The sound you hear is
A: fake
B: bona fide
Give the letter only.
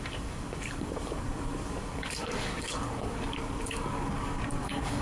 A